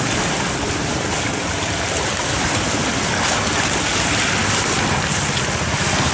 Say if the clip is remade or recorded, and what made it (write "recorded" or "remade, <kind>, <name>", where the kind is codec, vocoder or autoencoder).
recorded